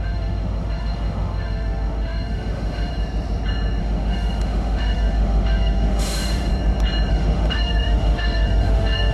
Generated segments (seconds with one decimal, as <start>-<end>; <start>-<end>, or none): 0.0-2.9; 3.8-6.5; 7.1-9.1